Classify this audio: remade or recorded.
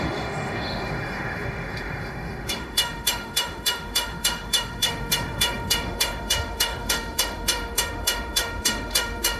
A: remade